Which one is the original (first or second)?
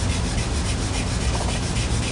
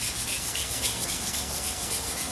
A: first